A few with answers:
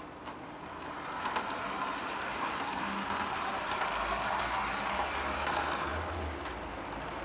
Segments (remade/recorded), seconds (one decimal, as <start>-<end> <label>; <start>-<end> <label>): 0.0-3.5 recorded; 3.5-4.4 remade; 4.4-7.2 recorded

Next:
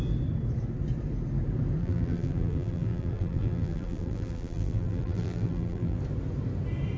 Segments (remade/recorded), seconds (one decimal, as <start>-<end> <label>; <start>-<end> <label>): 0.0-1.8 recorded; 1.8-6.0 remade; 6.0-7.0 recorded

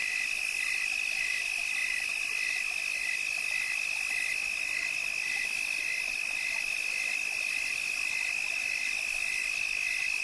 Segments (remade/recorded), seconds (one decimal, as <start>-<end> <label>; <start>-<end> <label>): 0.0-1.8 remade; 1.8-6.7 recorded; 6.7-10.2 remade

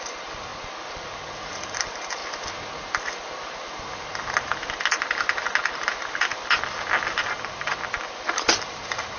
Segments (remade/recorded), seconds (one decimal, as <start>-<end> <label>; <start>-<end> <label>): 0.0-0.5 remade; 0.5-1.5 recorded; 1.5-2.2 remade; 2.2-7.2 recorded; 7.2-7.7 remade; 7.7-8.5 recorded; 8.5-9.2 remade

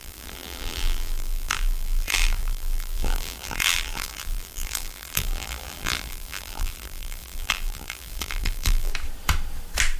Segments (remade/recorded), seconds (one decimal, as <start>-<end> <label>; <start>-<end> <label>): 0.0-8.9 remade; 8.9-10.0 recorded